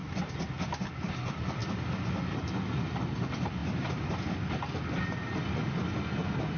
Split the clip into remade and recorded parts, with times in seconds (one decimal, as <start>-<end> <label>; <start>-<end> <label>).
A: 0.0-1.6 recorded; 1.6-2.4 remade; 2.4-3.6 recorded; 3.6-4.8 remade; 4.8-6.6 recorded